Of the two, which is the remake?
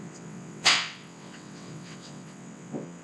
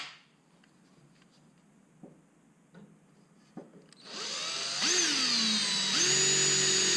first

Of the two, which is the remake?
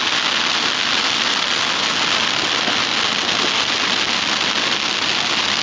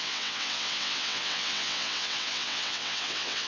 second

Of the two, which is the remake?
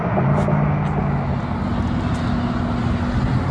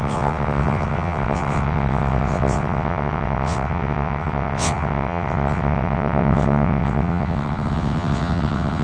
second